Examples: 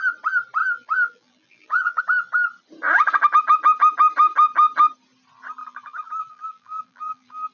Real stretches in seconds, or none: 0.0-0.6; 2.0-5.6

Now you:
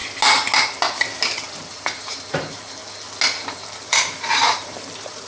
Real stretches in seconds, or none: 0.0-1.7; 2.8-3.5

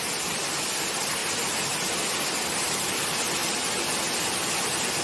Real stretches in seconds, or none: 1.2-2.0; 3.4-5.0